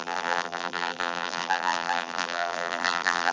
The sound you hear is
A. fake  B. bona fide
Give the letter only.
A